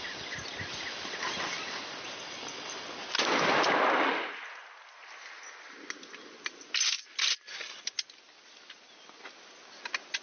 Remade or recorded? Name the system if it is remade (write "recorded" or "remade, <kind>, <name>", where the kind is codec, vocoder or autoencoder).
recorded